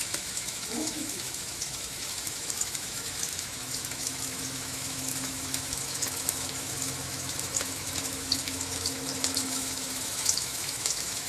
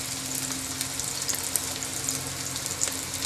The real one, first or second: second